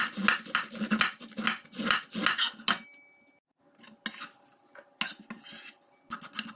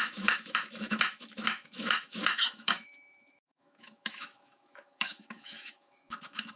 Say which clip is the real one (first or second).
first